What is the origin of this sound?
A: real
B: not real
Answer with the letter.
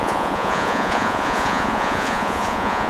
B